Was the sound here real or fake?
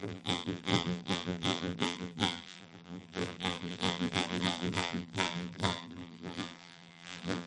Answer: fake